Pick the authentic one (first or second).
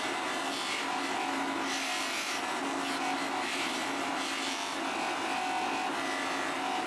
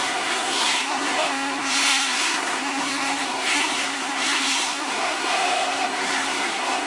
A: first